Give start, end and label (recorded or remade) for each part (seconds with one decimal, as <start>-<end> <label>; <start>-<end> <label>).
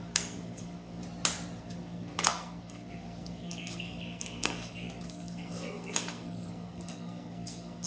0.0-1.0 remade; 1.0-1.6 recorded; 1.6-7.9 remade